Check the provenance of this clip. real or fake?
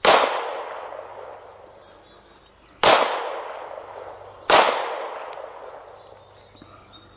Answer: real